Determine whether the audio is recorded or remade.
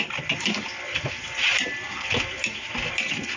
recorded